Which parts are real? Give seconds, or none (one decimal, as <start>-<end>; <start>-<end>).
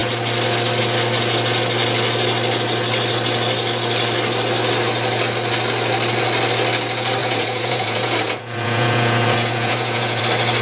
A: 0.0-7.2; 10.2-10.6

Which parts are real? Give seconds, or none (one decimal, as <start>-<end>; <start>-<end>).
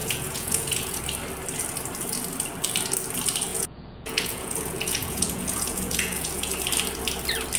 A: 1.0-3.5; 6.5-7.6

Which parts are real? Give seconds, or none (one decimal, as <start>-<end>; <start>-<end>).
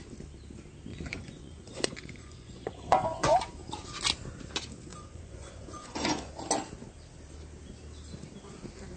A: 0.0-0.9; 3.4-4.9; 6.3-9.0